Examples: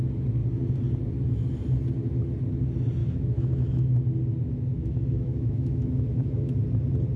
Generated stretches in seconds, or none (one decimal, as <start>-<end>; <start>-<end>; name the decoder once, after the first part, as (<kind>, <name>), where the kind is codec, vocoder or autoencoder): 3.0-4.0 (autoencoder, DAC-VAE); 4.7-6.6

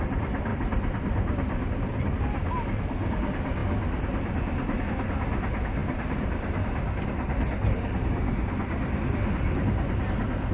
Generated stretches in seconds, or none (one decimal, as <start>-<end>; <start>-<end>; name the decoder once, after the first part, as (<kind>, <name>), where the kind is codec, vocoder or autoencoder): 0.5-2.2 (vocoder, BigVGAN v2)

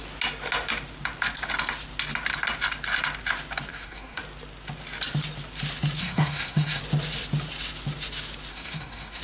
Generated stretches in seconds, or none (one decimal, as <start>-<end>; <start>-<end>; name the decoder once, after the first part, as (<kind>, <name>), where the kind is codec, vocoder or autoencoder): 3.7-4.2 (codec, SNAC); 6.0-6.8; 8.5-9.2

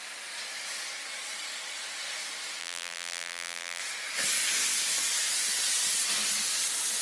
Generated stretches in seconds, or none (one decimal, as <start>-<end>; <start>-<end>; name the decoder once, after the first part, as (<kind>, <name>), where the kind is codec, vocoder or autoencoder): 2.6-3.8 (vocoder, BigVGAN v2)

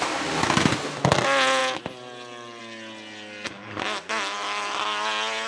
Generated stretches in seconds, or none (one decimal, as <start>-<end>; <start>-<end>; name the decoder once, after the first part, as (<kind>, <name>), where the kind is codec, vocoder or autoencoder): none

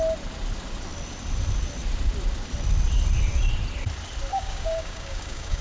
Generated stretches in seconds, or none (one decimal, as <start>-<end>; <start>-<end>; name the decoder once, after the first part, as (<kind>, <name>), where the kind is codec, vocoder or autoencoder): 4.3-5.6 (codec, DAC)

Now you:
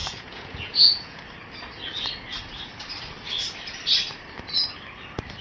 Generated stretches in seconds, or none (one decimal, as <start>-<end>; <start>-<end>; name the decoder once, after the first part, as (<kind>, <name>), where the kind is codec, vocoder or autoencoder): 0.0-1.2 (vocoder, Vocos)